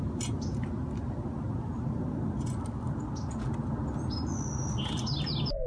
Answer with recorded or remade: recorded